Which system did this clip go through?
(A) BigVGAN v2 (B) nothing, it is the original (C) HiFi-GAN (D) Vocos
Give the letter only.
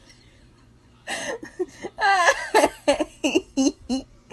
D